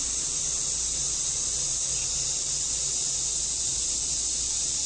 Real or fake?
real